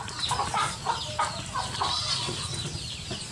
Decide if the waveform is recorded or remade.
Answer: recorded